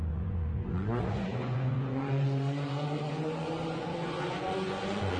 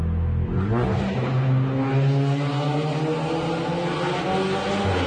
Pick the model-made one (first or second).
first